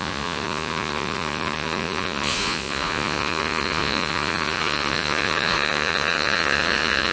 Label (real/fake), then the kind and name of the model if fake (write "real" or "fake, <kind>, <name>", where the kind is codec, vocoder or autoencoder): fake, vocoder, Vocos